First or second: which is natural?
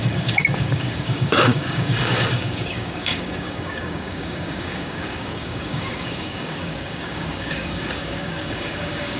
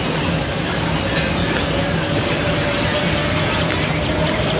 second